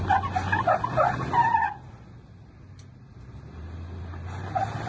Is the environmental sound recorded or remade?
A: recorded